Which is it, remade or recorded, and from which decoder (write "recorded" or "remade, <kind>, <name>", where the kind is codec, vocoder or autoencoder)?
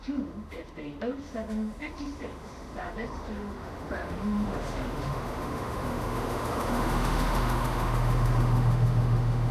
remade, autoencoder, DAC-VAE